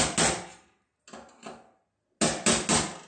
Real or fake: real